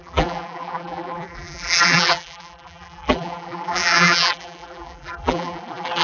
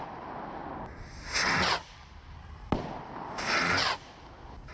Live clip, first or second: second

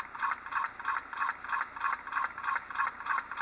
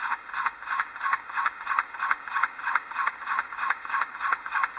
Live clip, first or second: first